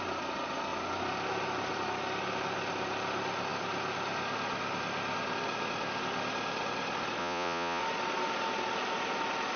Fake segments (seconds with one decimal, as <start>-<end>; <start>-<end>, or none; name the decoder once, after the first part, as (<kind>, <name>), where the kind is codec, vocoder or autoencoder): 7.2-7.8 (vocoder, Vocos)